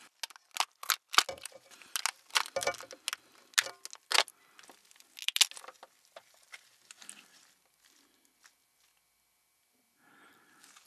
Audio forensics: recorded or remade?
recorded